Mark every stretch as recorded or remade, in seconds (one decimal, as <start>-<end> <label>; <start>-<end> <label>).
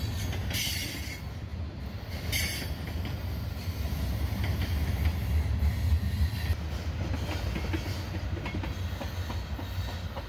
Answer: 0.0-10.3 recorded